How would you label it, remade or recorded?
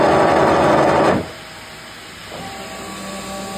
recorded